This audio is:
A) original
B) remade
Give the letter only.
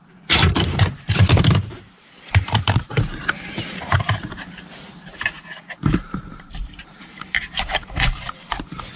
B